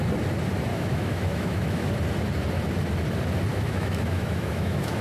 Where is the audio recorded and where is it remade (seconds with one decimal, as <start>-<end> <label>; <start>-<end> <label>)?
0.0-0.7 recorded; 0.7-1.9 remade; 1.9-3.5 recorded; 3.5-5.0 remade